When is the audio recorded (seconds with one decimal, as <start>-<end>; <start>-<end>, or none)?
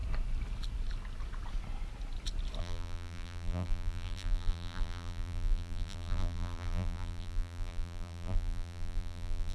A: 0.0-2.6